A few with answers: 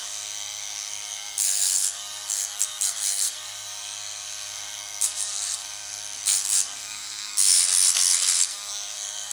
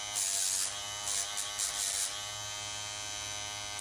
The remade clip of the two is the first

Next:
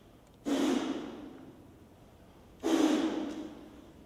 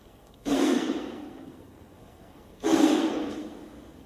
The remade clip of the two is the second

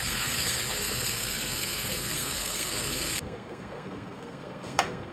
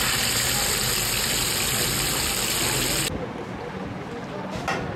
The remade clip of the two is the first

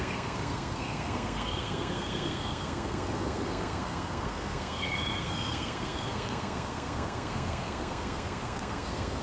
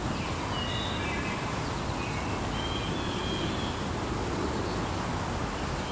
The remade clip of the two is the first